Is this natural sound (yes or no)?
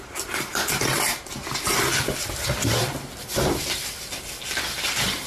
no